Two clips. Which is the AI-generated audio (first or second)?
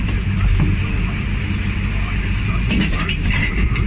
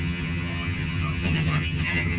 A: second